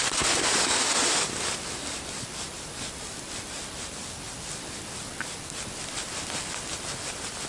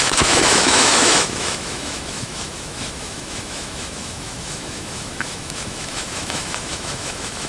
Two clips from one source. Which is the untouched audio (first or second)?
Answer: first